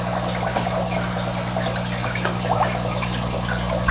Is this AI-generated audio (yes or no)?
no